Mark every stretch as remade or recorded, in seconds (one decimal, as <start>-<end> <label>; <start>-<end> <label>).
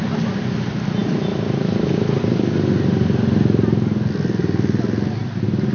0.0-5.7 recorded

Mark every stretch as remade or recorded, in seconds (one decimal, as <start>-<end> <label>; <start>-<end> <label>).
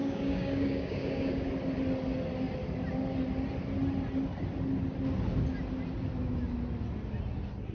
0.0-1.5 remade; 1.5-7.7 recorded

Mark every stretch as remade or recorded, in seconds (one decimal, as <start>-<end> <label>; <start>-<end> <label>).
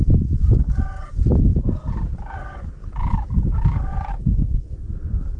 0.0-5.4 remade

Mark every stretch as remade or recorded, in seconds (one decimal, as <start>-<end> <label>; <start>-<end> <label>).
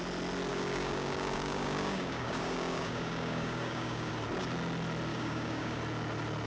0.0-0.5 recorded; 0.5-4.1 remade; 4.1-5.1 recorded; 5.1-5.8 remade; 5.8-6.5 recorded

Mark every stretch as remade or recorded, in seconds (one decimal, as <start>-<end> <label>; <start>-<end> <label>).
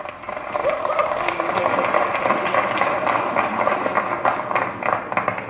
0.0-0.6 recorded; 0.6-1.6 remade; 1.6-5.5 recorded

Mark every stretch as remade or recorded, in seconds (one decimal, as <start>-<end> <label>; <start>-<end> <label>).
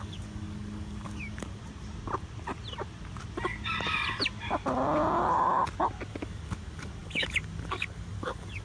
0.0-1.6 remade; 1.6-6.1 recorded; 6.1-8.6 remade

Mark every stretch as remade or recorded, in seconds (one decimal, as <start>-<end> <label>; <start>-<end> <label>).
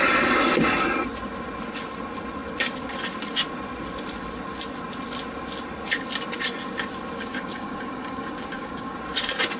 0.0-7.2 recorded; 7.2-9.0 remade; 9.0-9.6 recorded